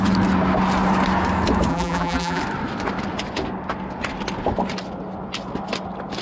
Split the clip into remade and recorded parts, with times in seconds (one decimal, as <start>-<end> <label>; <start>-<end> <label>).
0.0-1.7 recorded; 1.7-2.4 remade; 2.4-6.2 recorded